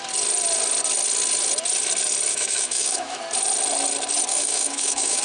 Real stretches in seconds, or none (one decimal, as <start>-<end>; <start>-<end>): 0.0-2.3; 3.2-4.3